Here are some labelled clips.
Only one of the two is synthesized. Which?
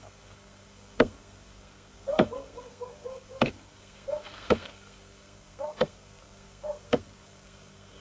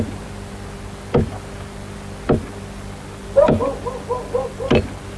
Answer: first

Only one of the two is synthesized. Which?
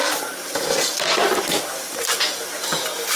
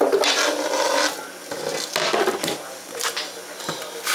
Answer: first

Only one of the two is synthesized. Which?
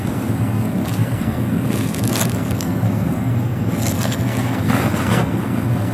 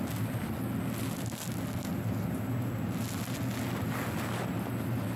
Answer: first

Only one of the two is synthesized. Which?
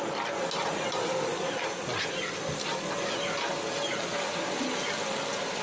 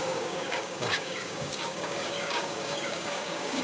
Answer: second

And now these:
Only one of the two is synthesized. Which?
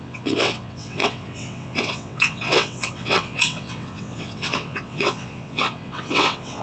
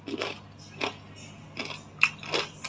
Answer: first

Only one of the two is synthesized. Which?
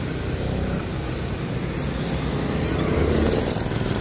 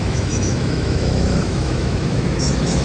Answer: second